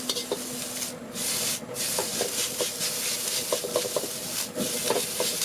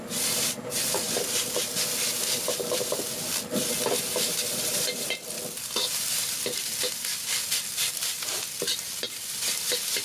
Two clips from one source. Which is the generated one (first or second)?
second